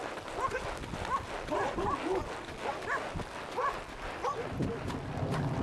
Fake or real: real